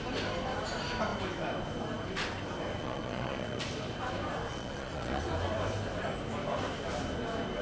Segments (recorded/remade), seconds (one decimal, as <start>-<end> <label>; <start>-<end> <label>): 0.0-2.8 recorded; 2.8-3.6 remade; 3.6-4.5 recorded; 4.5-5.2 remade; 5.2-7.6 recorded

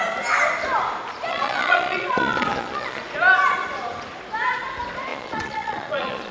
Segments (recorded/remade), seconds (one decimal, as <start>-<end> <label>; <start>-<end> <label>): 0.0-1.3 recorded; 1.3-3.0 remade; 3.0-5.1 recorded; 5.1-6.3 remade

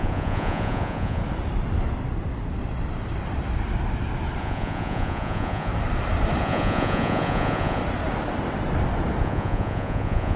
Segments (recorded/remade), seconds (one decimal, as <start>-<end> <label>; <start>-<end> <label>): 0.0-1.2 remade; 1.2-4.4 recorded; 4.4-5.7 remade; 5.7-6.4 recorded; 6.4-7.8 remade; 7.8-9.2 recorded; 9.2-10.4 remade